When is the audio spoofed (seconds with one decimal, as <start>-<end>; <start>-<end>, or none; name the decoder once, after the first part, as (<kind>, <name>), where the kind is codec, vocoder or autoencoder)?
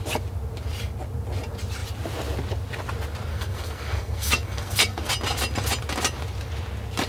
3.3-5.1 (codec, SNAC)